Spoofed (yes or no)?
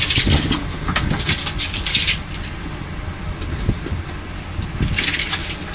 no